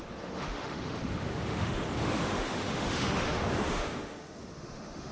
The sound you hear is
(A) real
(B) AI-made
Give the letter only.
B